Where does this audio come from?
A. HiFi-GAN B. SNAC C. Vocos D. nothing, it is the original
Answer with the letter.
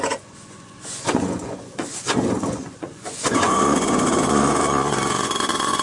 C